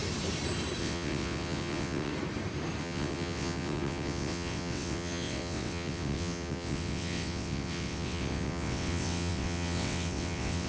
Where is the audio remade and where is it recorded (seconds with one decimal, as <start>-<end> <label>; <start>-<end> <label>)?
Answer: 0.0-0.8 recorded; 0.8-2.1 remade; 2.1-2.8 recorded; 2.8-10.7 remade